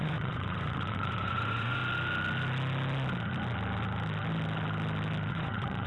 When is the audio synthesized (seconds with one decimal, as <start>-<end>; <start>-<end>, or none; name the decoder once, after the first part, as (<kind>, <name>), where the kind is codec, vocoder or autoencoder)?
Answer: 0.0-1.8 (vocoder, Vocos); 5.3-5.9